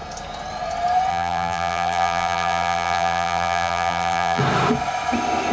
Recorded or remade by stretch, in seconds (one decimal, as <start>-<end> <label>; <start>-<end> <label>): 0.0-1.1 recorded; 1.1-4.4 remade; 4.4-5.5 recorded